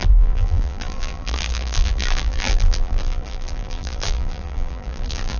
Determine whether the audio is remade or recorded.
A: remade